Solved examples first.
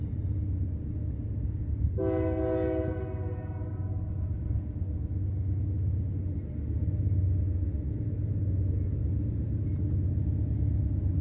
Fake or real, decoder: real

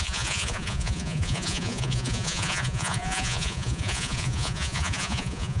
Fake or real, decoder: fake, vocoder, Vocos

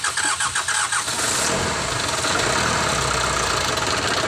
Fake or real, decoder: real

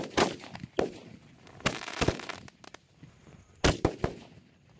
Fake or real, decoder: real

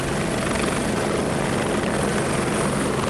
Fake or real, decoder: real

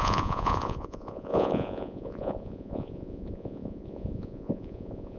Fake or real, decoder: fake, vocoder, Vocos